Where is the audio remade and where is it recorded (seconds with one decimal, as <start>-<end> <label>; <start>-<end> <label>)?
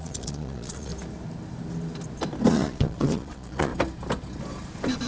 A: 0.0-0.9 remade; 0.9-2.5 recorded; 2.5-3.7 remade; 3.7-5.1 recorded